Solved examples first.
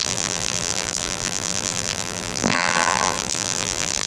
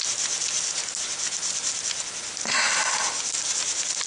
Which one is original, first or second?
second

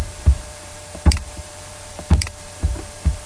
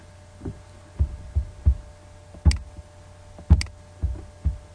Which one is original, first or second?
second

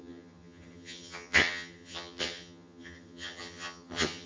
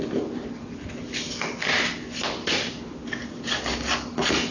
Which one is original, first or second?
second